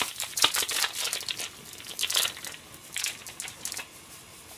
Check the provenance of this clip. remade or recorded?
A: recorded